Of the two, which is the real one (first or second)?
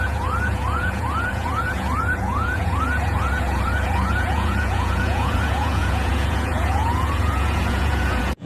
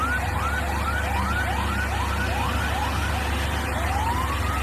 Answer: second